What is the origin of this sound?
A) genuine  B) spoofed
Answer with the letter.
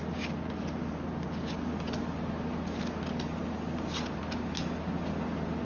A